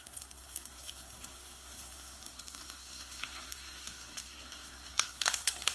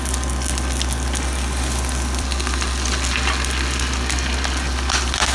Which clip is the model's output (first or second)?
first